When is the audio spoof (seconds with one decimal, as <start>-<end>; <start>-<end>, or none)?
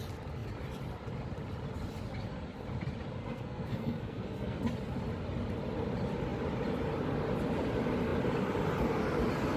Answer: 3.2-4.6